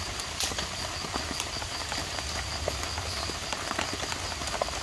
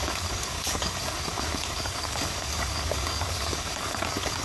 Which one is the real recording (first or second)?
first